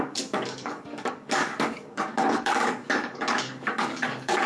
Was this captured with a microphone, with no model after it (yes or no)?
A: no